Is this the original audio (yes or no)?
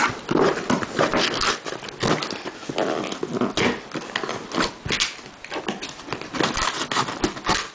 yes